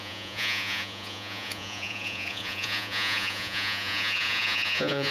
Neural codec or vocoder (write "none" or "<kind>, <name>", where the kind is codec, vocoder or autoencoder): vocoder, Vocos